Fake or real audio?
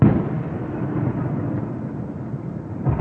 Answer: real